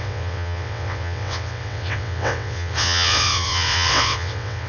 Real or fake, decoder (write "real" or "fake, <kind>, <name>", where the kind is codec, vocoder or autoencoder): fake, vocoder, WaveNeXt